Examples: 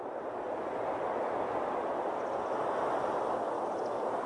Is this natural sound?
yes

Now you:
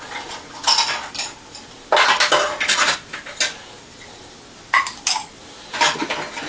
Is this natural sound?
yes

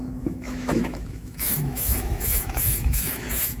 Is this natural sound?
no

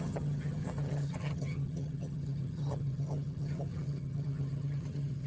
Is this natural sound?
no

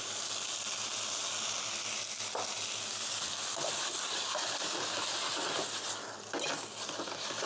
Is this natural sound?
yes